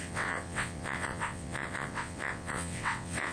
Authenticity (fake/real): fake